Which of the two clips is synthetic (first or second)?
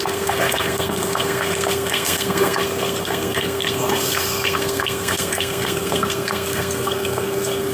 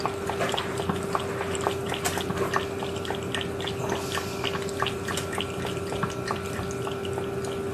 first